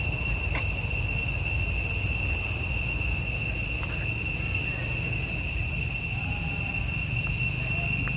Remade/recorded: recorded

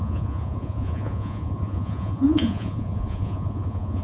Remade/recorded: remade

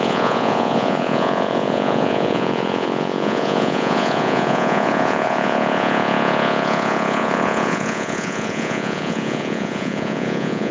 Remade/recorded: remade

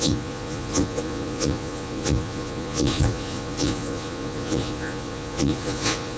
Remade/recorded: remade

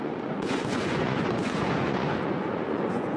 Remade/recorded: remade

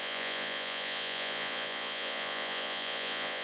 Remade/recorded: remade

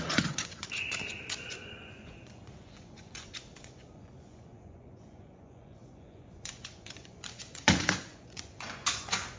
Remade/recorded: remade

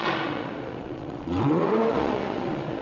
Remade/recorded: remade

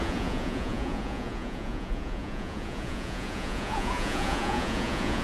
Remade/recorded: remade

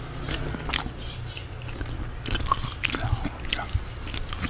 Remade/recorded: recorded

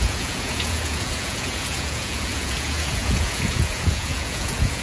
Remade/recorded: remade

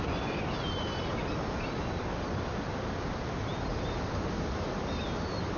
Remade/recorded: recorded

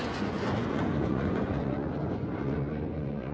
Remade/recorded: remade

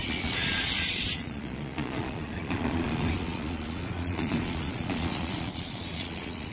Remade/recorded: remade